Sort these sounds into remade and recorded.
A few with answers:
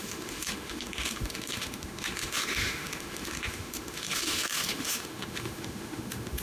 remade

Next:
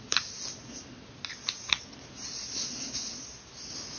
recorded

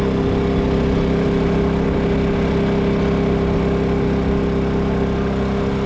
recorded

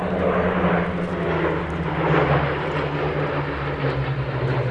recorded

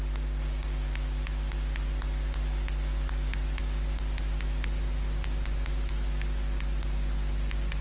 recorded